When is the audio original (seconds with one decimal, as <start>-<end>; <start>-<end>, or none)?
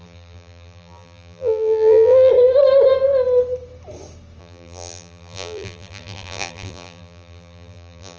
2.3-4.4